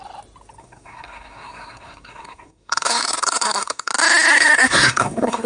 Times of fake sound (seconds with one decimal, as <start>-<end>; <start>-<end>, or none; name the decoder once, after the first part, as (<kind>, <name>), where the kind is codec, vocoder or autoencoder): 0.6-3.9 (codec, SNAC); 4.3-5.5